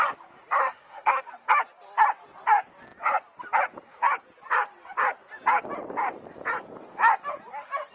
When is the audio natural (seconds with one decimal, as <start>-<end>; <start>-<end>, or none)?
0.0-0.6; 1.2-7.9